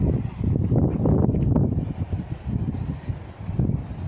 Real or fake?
real